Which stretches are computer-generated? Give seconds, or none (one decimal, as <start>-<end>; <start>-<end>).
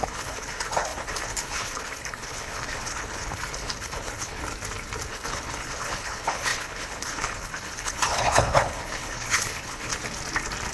0.0-4.4; 5.1-9.9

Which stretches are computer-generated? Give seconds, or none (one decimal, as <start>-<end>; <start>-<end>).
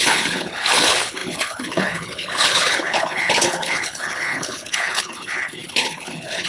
0.0-6.5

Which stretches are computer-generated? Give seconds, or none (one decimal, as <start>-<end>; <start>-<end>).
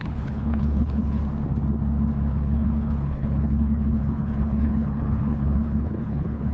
0.0-1.2; 2.3-6.5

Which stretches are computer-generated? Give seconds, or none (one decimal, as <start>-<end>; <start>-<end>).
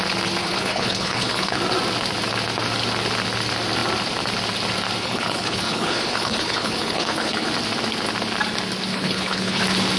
0.4-1.6; 5.0-7.5; 8.9-9.6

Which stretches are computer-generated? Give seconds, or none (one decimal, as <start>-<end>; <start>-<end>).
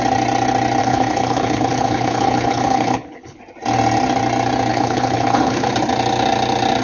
0.8-3.4; 4.7-5.7